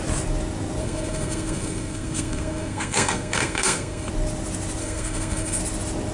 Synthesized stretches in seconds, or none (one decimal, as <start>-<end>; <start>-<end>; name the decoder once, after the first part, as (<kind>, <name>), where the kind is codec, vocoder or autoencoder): 0.8-4.1 (codec, SNAC); 4.8-5.6

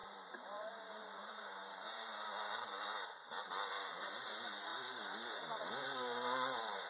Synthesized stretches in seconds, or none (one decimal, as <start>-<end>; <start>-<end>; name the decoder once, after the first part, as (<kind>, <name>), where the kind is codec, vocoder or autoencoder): 0.0-4.1 (vocoder, BigVGAN v2)

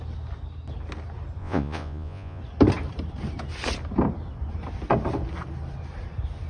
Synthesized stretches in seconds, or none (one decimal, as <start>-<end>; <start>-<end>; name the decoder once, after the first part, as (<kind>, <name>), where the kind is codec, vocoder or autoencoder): 1.4-2.4 (vocoder, Vocos)